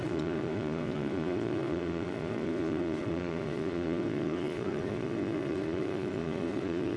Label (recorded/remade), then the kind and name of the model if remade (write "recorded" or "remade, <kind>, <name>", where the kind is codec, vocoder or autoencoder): remade, vocoder, Vocos